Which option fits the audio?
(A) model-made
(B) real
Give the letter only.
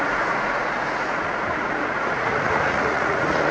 A